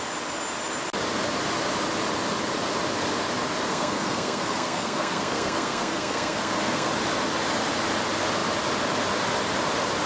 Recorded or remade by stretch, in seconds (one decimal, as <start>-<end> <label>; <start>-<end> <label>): 0.0-3.7 recorded; 3.7-6.9 remade; 6.9-10.1 recorded